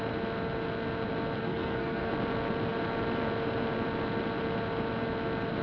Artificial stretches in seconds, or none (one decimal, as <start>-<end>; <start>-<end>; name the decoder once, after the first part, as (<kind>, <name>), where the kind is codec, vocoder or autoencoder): 1.4-2.1 (codec, SNAC)

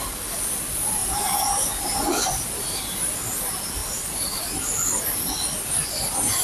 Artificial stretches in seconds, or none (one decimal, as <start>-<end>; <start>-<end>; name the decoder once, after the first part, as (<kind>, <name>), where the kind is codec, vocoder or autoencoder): 1.0-2.3 (vocoder, BigVGAN v2); 3.8-4.4

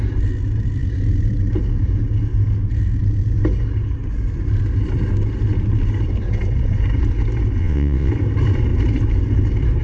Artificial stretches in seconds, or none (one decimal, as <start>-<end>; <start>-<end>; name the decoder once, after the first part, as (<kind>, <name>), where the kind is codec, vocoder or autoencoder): 7.6-8.1 (vocoder, WaveNeXt)

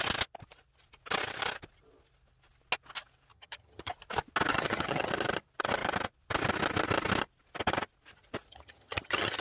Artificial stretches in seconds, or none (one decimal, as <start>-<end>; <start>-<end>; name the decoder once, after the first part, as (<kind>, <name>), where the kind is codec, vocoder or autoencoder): 3.3-3.9 (vocoder, HiFi-GAN); 4.5-5.1; 8.5-9.4

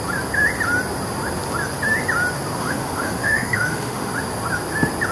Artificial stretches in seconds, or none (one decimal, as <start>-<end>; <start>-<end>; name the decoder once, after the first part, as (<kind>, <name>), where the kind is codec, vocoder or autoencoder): 2.6-4.1 (autoencoder, DAC-VAE)

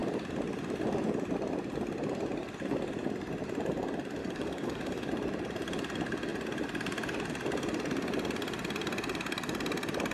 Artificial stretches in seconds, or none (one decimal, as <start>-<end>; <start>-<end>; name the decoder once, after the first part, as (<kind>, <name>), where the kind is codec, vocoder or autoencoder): 4.2-5.1 (codec, DAC)

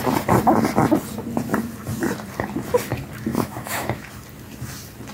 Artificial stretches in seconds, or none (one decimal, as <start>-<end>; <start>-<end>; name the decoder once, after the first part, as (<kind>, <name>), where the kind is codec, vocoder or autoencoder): 3.3-4.1 (autoencoder, DAC-VAE)